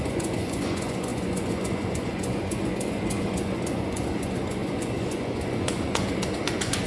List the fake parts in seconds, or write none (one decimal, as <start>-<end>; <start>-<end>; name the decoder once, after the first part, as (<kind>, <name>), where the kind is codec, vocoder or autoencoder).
0.0-6.9 (vocoder, Vocos)

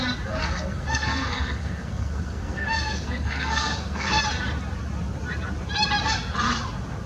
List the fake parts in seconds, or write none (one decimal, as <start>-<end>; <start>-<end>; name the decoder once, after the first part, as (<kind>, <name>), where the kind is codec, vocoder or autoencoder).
0.4-4.2 (codec, SNAC)

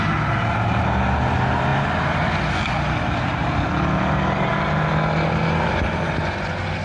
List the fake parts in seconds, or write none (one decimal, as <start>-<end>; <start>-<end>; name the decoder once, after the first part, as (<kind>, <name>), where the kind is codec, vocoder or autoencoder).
none

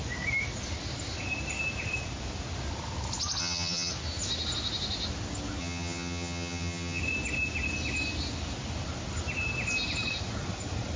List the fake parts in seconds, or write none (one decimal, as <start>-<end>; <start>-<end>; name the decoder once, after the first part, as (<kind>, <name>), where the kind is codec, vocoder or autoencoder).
3.4-3.9 (vocoder, HiFi-GAN); 5.6-7.0

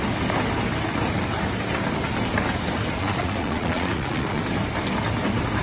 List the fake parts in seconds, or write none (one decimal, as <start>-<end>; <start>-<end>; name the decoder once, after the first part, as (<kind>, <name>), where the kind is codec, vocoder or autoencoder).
3.0-4.4 (vocoder, Vocos)